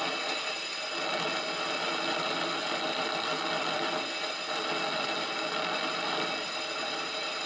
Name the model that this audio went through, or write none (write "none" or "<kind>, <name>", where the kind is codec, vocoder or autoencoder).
none